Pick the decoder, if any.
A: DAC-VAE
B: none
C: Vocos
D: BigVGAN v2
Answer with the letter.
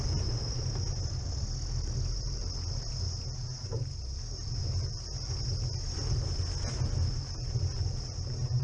B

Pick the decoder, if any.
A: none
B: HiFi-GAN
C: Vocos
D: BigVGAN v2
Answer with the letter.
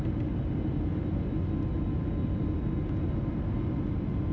A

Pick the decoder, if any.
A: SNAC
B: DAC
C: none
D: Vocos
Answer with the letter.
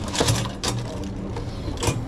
C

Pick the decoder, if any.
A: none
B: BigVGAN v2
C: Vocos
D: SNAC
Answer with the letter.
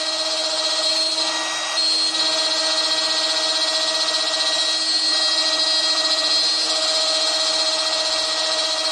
A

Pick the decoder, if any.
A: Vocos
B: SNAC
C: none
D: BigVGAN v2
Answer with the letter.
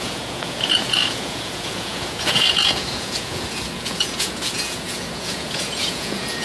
A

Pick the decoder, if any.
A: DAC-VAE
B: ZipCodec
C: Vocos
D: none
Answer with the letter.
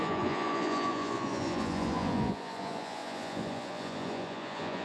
C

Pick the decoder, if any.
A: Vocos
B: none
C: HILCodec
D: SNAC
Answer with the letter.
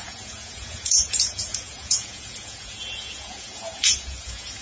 A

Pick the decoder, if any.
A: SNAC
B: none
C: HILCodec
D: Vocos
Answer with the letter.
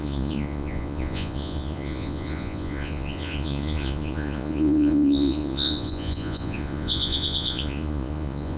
D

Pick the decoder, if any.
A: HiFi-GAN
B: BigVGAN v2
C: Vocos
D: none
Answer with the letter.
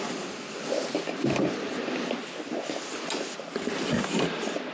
D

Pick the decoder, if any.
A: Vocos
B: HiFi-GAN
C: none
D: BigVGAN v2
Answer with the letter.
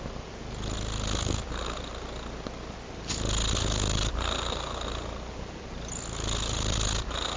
C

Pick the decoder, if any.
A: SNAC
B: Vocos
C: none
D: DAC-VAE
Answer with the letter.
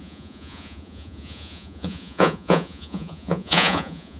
B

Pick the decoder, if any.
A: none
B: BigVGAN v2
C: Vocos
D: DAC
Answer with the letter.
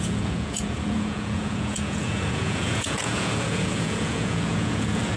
C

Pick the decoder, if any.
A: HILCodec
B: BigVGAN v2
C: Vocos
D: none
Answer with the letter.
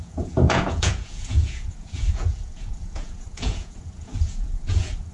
C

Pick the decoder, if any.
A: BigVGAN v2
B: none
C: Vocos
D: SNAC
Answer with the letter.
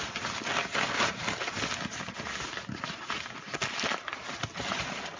B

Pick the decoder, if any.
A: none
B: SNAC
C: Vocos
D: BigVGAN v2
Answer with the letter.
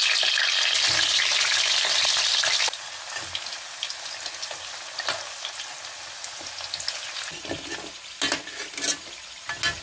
A